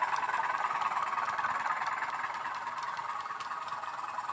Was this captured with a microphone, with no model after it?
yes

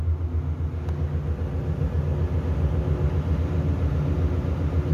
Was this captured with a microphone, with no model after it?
yes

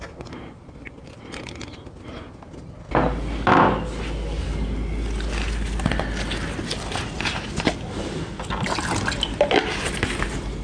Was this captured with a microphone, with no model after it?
yes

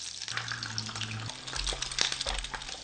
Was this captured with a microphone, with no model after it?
yes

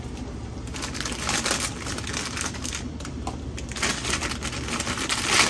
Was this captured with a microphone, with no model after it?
yes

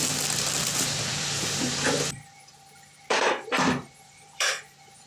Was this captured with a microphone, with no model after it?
no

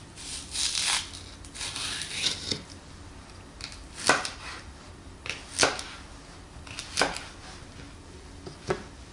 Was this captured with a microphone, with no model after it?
yes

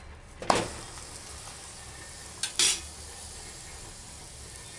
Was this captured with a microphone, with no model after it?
yes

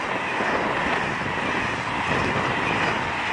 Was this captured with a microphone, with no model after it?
yes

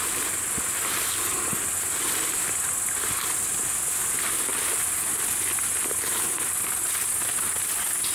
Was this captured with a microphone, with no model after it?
yes